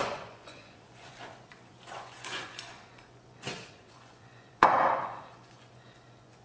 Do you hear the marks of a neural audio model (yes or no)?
yes